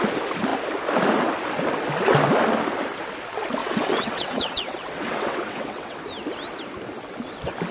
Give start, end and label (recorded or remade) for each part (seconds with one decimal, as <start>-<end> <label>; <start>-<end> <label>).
0.0-3.6 recorded; 3.6-6.0 remade; 6.0-7.7 recorded